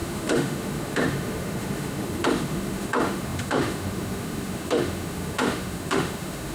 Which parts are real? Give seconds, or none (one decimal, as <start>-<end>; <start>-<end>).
none